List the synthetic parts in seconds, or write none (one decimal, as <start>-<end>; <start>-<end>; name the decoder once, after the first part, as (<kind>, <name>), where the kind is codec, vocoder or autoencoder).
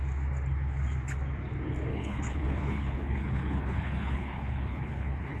1.9-5.4 (codec, HILCodec)